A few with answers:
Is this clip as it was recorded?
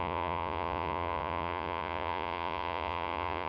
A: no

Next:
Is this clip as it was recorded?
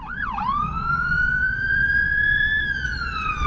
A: no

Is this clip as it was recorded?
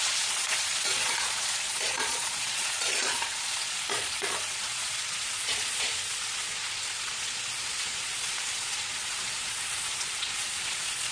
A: no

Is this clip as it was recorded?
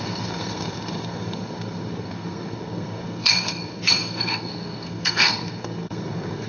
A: no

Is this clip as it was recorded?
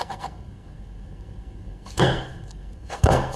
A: no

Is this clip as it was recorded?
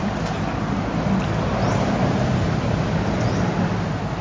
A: yes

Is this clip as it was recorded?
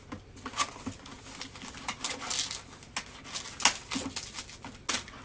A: yes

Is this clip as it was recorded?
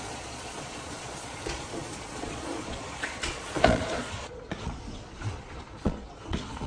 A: no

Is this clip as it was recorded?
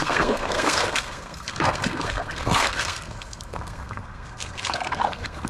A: no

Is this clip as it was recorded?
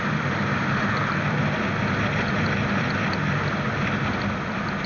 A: yes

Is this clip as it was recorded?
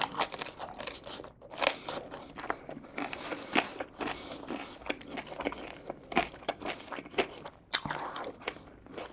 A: yes